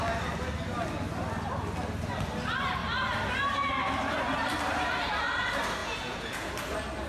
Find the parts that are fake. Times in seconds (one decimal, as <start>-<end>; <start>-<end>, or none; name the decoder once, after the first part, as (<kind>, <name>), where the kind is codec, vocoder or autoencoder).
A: 5.8-6.5 (vocoder, Vocos)